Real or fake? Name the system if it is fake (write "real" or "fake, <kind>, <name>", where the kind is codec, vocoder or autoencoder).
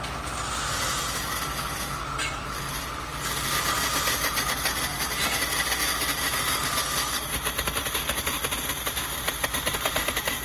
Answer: real